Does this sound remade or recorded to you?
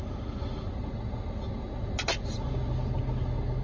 recorded